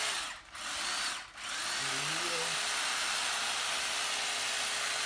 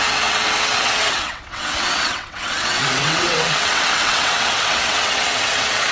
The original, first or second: first